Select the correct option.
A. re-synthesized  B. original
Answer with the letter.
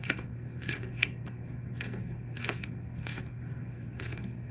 A